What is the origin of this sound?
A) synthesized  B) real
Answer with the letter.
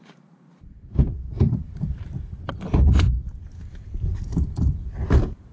A